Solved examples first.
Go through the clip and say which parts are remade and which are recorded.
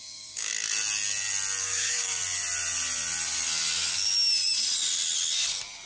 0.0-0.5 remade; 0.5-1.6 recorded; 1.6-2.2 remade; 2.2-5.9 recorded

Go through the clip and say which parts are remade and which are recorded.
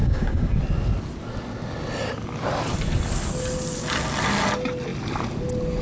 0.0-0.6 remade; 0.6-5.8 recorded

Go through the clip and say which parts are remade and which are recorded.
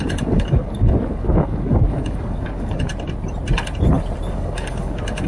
0.0-2.9 remade; 2.9-4.3 recorded; 4.3-5.3 remade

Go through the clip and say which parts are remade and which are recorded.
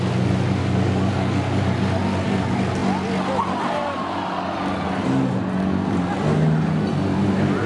0.0-0.6 recorded; 0.6-1.1 remade; 1.1-7.7 recorded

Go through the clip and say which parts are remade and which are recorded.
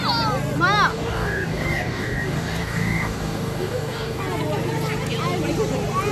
0.0-0.9 recorded; 0.9-4.2 remade; 4.2-6.1 recorded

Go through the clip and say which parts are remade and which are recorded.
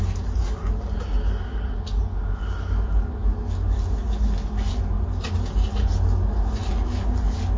0.0-1.0 recorded; 1.0-1.5 remade; 1.5-7.6 recorded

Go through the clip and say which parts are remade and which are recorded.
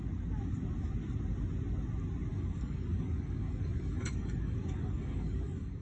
0.0-2.3 recorded; 2.3-5.8 remade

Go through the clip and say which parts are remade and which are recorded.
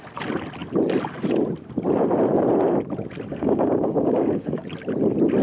0.0-3.3 recorded; 3.3-4.6 remade; 4.6-5.4 recorded